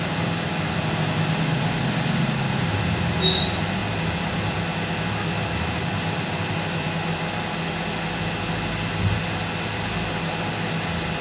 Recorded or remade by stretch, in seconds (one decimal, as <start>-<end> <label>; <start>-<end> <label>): 0.0-11.2 recorded